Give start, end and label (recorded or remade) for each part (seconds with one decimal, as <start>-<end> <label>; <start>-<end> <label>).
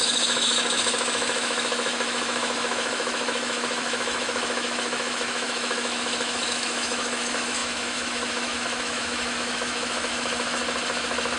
0.0-10.6 remade; 10.6-11.4 recorded